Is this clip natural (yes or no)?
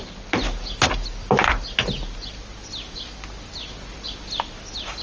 yes